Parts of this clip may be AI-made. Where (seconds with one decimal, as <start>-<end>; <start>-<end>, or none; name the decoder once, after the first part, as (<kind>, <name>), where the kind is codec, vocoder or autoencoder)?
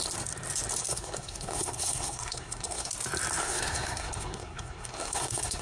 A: 0.9-2.9 (codec, SNAC); 3.4-5.6